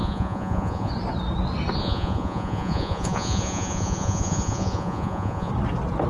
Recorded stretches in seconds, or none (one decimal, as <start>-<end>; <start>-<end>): 0.9-1.8; 5.5-6.1